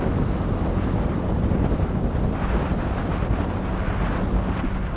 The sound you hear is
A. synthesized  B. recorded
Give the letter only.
B